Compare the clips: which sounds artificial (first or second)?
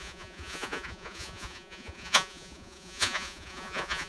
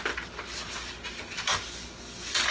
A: first